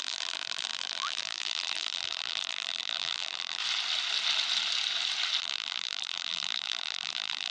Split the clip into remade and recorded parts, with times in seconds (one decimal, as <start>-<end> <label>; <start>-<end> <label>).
0.0-3.6 remade; 3.6-5.4 recorded; 5.4-7.5 remade